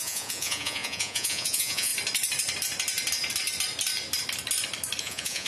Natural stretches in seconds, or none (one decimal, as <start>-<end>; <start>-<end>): 1.9-5.0